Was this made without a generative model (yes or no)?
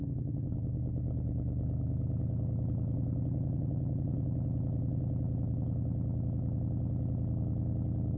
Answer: yes